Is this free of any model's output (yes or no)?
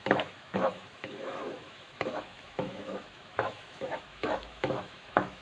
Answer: no